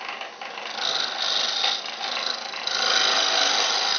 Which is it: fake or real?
real